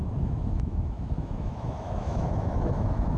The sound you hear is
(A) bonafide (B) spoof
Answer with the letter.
B